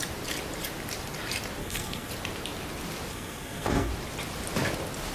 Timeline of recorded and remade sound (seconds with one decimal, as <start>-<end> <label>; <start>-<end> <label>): 0.0-1.6 recorded; 1.6-2.1 remade; 2.1-3.1 recorded; 3.1-3.9 remade; 3.9-5.1 recorded